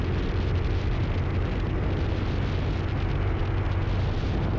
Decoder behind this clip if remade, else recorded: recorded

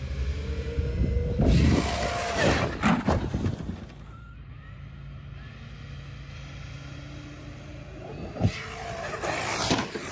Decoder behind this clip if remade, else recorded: recorded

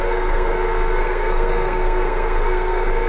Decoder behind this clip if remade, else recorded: remade, codec, SNAC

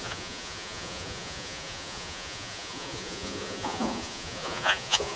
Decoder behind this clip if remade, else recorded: remade, vocoder, Vocos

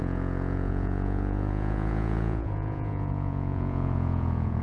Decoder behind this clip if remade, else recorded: remade, vocoder, Vocos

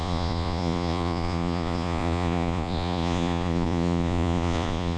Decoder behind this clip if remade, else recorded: remade, vocoder, Vocos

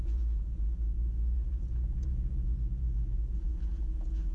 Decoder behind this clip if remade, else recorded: remade, vocoder, Vocos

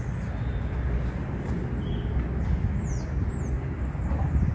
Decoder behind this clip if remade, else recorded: recorded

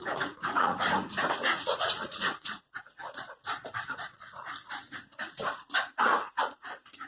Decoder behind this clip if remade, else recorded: remade, vocoder, Vocos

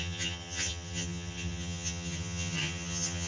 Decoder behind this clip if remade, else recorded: remade, vocoder, HiFi-GAN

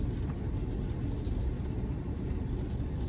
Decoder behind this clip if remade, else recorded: recorded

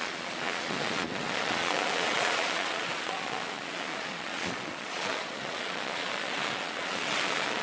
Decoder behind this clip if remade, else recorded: remade, vocoder, Vocos